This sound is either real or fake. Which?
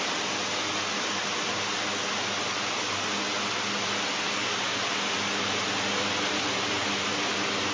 real